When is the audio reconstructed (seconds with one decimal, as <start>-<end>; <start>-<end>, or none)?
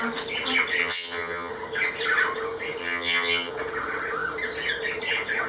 0.8-1.5; 2.8-3.5